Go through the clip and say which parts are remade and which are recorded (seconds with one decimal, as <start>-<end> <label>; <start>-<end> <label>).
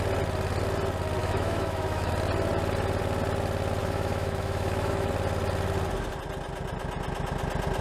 0.0-1.2 recorded; 1.2-2.1 remade; 2.1-3.8 recorded; 3.8-5.1 remade; 5.1-7.8 recorded